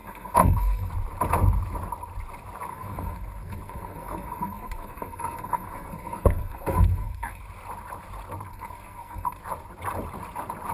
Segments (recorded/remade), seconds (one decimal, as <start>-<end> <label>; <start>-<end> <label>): 0.0-0.9 remade; 0.9-2.7 recorded; 2.7-7.4 remade; 7.4-8.5 recorded; 8.5-9.4 remade; 9.4-10.7 recorded